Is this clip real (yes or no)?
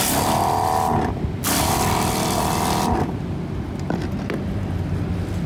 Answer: yes